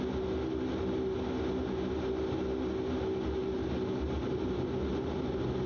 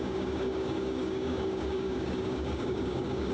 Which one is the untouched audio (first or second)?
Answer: first